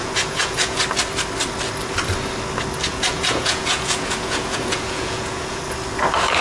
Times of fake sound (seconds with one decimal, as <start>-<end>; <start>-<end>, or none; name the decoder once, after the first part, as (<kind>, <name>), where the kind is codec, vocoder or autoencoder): 0.0-0.8 (vocoder, Vocos); 2.9-5.6